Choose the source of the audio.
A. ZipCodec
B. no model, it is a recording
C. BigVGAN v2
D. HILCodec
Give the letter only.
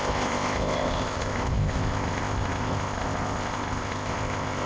A